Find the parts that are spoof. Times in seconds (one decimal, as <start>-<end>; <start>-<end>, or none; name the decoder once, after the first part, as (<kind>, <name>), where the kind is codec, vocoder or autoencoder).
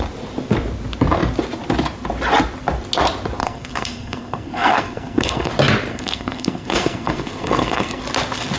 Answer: 3.4-5.5 (codec, SNAC); 5.9-8.0